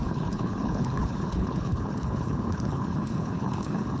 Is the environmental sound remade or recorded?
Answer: remade